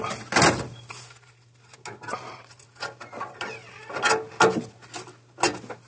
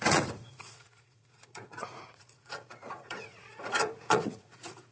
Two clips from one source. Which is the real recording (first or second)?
first